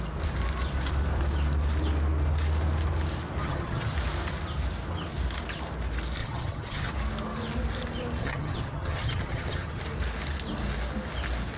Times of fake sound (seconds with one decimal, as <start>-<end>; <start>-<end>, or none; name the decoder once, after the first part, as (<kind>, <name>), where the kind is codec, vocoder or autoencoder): 3.4-3.9 (vocoder, HiFi-GAN); 6.2-6.9; 8.2-9.8